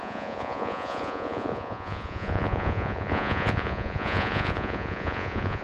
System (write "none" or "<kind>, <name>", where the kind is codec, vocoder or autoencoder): vocoder, Vocos